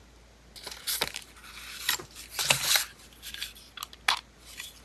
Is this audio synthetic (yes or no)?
no